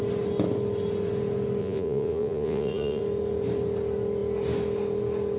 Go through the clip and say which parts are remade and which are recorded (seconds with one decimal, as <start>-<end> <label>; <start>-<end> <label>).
0.0-1.6 recorded; 1.6-3.0 remade; 3.0-5.4 recorded